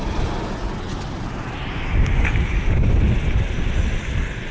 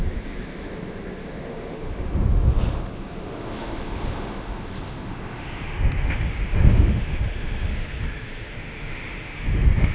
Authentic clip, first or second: first